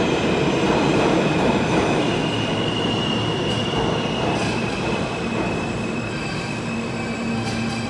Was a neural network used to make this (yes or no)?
no